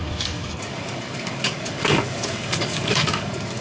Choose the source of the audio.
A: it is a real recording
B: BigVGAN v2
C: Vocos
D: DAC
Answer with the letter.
D